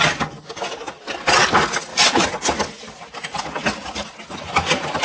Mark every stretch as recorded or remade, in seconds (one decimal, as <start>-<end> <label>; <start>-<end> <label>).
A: 0.0-5.0 recorded